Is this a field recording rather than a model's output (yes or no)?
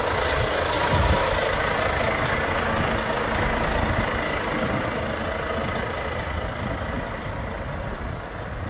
yes